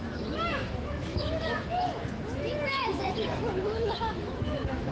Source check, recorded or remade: remade